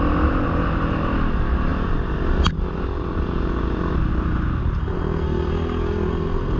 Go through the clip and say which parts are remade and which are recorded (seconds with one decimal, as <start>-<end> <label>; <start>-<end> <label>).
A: 0.0-4.8 recorded; 4.8-6.6 remade